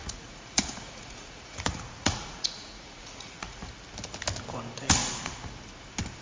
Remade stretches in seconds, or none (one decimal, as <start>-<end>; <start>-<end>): 0.0-3.7; 5.0-5.5